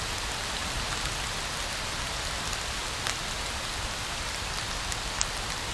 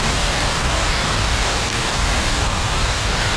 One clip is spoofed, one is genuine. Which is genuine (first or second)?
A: first